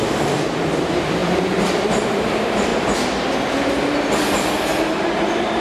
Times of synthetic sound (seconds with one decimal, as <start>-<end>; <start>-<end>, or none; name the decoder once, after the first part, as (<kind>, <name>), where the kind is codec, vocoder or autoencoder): 0.0-2.7 (vocoder, BigVGAN v2); 4.6-5.6